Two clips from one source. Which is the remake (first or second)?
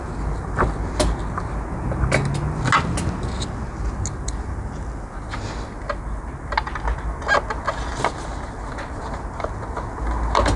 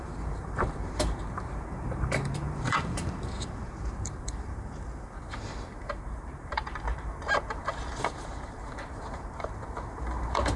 second